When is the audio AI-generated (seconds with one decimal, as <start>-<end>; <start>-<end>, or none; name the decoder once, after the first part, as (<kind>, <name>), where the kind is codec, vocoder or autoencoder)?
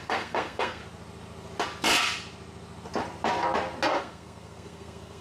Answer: 0.0-0.8 (codec, SNAC); 3.9-5.2